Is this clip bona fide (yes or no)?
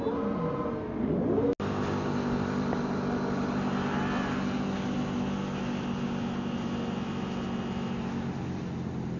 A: yes